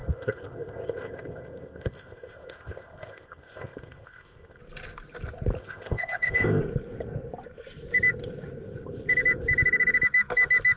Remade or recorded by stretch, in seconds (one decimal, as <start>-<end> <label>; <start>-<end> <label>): 0.0-4.6 remade; 4.6-5.6 recorded; 5.6-6.6 remade; 6.6-10.8 recorded